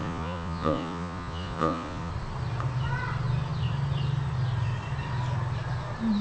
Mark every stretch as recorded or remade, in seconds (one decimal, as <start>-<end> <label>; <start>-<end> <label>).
0.0-2.1 remade; 2.1-6.2 recorded